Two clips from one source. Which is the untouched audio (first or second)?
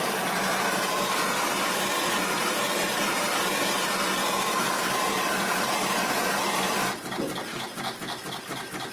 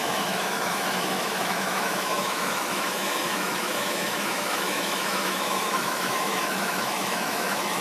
first